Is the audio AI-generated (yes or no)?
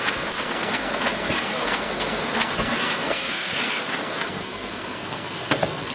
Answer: yes